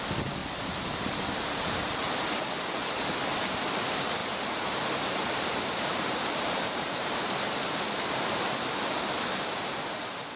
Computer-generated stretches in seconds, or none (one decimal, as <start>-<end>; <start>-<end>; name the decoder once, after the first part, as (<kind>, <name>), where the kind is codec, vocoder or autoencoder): 0.4-1.9 (vocoder, BigVGAN v2); 4.2-7.2